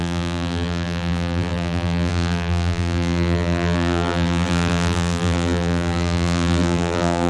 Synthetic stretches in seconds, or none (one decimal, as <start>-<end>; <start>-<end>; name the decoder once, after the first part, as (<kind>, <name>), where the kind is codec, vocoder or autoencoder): 0.0-7.3 (vocoder, BigVGAN v2)